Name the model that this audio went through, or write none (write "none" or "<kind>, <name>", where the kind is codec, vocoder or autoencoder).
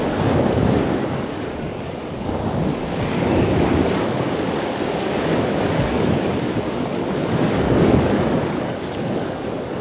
codec, DAC